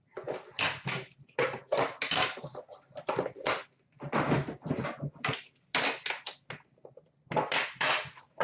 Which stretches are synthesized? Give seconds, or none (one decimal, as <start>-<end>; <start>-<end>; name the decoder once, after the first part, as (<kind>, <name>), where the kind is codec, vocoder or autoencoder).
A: none